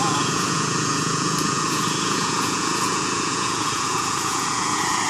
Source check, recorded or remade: remade